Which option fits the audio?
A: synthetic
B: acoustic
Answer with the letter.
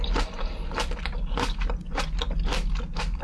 B